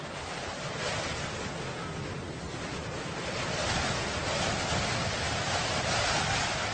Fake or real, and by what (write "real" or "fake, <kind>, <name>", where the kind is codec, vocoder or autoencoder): real